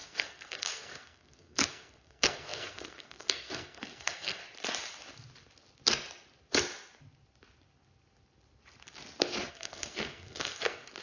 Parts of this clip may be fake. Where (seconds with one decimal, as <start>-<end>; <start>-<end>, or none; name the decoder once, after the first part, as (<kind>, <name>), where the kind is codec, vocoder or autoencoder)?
0.0-4.4 (codec, SNAC); 9.5-11.0